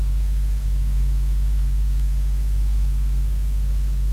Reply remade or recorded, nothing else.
remade